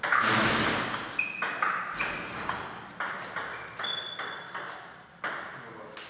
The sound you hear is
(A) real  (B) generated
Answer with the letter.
A